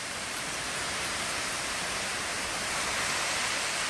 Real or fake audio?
fake